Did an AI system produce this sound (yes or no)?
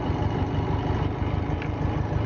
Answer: no